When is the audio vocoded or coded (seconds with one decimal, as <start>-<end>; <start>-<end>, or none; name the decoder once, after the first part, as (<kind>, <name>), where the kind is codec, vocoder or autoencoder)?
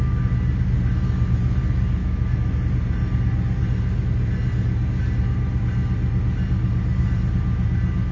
2.0-2.5 (autoencoder, DAC-VAE)